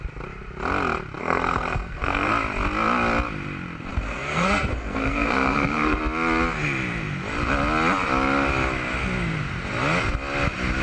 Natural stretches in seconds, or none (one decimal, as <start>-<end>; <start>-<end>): 0.0-1.2; 2.3-3.9; 6.0-10.8